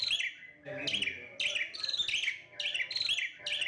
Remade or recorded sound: recorded